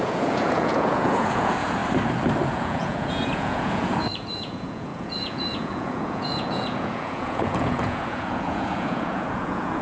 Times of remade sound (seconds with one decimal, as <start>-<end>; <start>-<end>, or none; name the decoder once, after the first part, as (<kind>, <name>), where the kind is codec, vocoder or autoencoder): 0.0-1.8 (vocoder, Vocos); 2.5-9.8